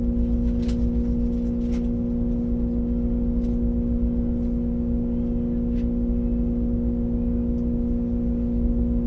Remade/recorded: recorded